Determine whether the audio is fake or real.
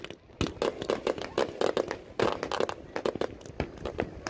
real